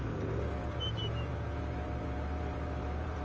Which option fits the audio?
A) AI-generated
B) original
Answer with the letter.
B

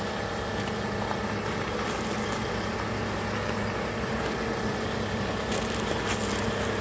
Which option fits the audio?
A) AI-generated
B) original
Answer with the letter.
B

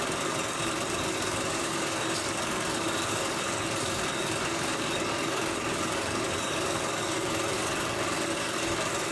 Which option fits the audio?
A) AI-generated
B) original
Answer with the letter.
A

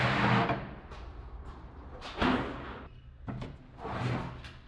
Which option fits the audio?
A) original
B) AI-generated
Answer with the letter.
A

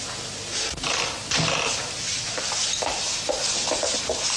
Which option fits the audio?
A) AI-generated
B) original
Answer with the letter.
B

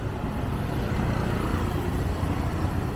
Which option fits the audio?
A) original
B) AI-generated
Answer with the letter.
A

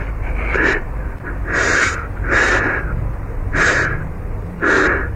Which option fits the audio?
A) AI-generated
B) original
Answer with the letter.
A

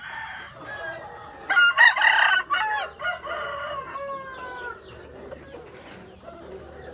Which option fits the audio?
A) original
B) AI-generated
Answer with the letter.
A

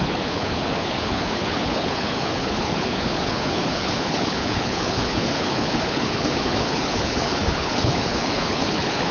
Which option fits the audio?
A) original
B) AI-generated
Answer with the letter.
B